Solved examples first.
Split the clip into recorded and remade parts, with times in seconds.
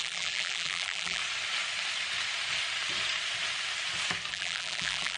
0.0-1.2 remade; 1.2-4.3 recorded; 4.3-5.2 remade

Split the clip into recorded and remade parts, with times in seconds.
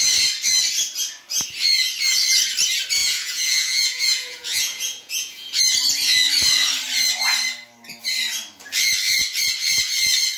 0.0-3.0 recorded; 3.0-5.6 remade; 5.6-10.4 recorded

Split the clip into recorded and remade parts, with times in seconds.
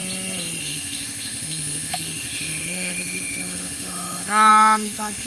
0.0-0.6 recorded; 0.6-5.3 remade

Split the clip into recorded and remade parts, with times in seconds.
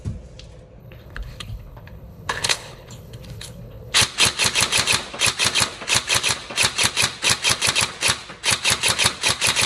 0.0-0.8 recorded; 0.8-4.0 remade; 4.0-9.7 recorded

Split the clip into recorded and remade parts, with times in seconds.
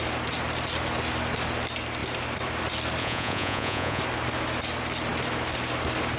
0.0-3.0 recorded; 3.0-4.0 remade; 4.0-6.2 recorded